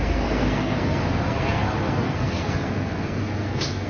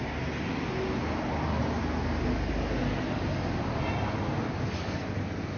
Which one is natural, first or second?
second